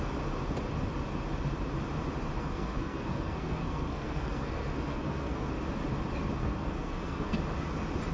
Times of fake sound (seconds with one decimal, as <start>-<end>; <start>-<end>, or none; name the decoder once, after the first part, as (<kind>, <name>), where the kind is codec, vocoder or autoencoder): 2.4-5.5 (codec, SNAC); 6.4-7.4